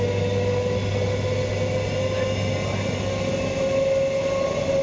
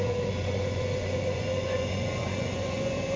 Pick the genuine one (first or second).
first